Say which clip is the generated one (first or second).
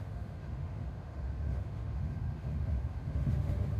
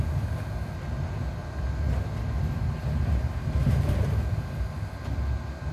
first